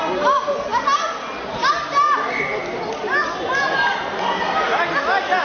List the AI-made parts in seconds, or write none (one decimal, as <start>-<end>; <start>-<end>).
none